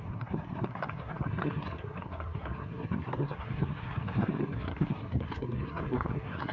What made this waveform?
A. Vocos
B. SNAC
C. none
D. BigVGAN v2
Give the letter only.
B